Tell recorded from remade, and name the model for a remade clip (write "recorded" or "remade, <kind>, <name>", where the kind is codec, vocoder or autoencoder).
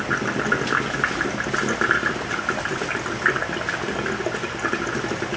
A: recorded